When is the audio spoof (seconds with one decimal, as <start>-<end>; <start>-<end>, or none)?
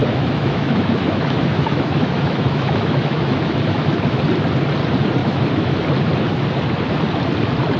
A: 0.0-4.2; 5.2-5.8